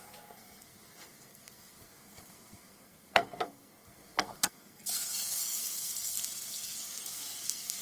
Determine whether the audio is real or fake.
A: fake